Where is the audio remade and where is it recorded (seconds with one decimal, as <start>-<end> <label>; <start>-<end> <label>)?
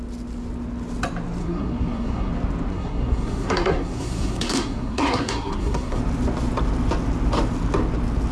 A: 0.0-1.4 recorded; 1.4-2.3 remade; 2.3-2.7 recorded; 2.7-6.0 remade; 6.0-8.3 recorded